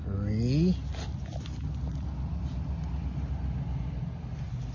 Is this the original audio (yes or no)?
yes